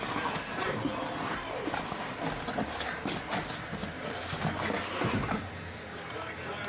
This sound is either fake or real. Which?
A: real